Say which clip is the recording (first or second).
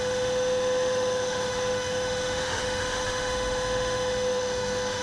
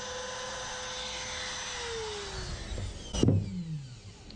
second